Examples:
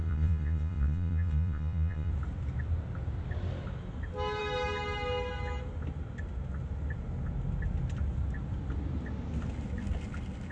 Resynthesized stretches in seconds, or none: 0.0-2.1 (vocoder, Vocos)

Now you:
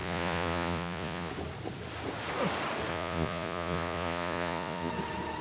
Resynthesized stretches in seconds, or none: 0.0-1.3 (vocoder, Vocos); 2.9-4.9